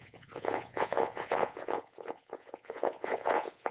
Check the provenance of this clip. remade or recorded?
remade